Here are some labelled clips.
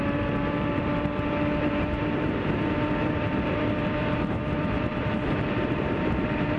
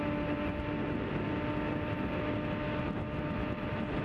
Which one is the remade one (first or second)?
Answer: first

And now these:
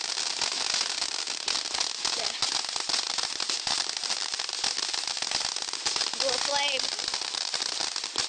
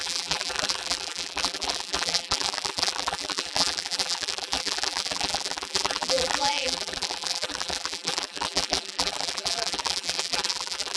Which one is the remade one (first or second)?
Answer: second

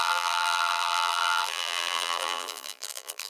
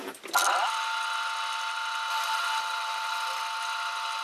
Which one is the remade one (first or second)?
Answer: first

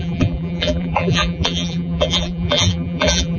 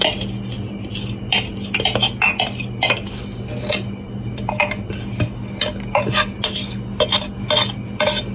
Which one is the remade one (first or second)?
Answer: first